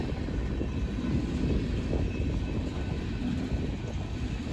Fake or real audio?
real